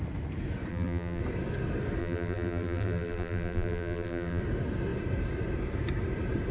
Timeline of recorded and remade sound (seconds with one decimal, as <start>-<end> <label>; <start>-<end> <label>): 0.0-0.7 recorded; 0.7-1.2 remade; 1.2-2.0 recorded; 2.0-4.4 remade; 4.4-6.5 recorded